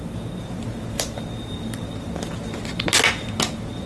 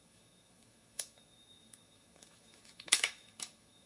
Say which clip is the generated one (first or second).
second